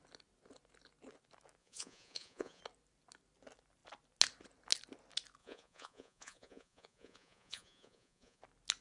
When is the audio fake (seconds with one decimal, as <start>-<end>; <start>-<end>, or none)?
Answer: 1.6-2.6; 5.4-8.4